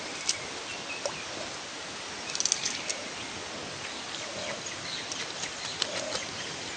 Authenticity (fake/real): real